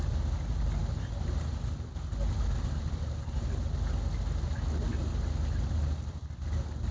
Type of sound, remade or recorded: recorded